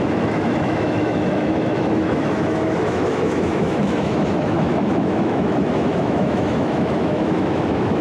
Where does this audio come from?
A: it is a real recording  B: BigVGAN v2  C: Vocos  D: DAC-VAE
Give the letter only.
D